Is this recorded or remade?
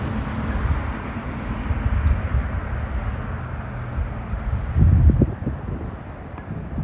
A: recorded